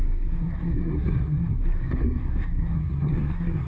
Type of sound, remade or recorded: remade